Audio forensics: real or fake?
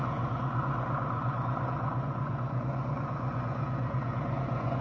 fake